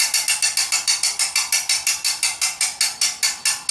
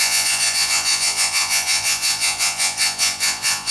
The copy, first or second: second